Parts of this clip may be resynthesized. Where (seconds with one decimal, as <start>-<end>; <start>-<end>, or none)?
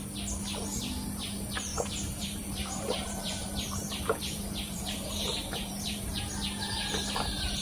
1.7-6.2